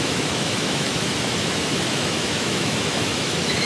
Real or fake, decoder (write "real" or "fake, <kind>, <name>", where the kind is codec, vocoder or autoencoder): fake, autoencoder, DAC-VAE